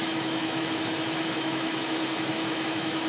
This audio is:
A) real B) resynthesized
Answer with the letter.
B